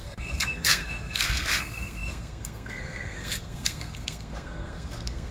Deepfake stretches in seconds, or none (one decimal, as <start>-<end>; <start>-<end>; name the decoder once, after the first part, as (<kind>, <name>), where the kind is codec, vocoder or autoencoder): 0.0-5.3 (codec, SNAC)